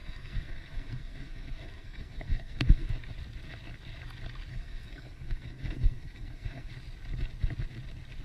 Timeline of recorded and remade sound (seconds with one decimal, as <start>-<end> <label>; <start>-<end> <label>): 0.0-2.9 remade; 2.9-4.5 recorded; 4.5-6.7 remade; 6.7-8.2 recorded

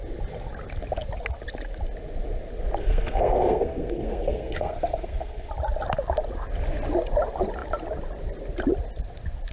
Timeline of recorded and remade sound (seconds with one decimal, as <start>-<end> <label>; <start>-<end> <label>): 0.0-2.8 recorded; 2.8-5.5 remade; 5.5-9.5 recorded

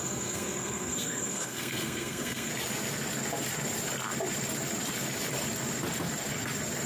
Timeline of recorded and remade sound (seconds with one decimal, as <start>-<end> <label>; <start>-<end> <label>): 0.0-2.5 remade; 2.5-6.9 recorded

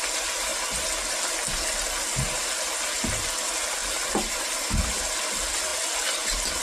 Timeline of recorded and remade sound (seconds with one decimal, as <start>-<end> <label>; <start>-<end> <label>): 0.0-6.6 recorded

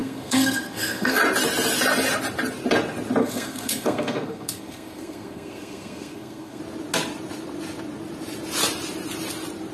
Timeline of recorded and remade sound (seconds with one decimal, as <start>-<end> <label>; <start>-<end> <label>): 0.0-1.2 remade; 1.2-3.2 recorded; 3.2-6.6 remade; 6.6-9.7 recorded

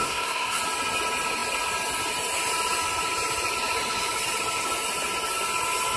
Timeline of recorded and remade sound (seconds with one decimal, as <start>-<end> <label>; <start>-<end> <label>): 0.0-0.6 remade; 0.6-6.0 recorded